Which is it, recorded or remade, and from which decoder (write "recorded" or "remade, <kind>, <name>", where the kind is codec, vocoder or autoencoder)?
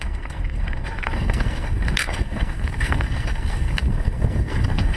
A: remade, codec, SNAC